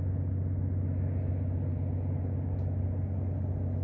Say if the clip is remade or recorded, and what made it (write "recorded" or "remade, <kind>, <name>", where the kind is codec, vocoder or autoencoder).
recorded